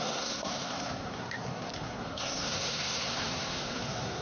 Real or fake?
fake